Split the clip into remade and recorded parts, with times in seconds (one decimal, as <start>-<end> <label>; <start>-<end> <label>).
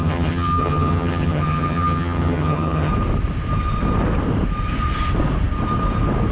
0.0-2.9 remade; 2.9-6.3 recorded